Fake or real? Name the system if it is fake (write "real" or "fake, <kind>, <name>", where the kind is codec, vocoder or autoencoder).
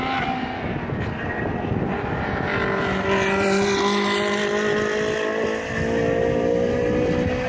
real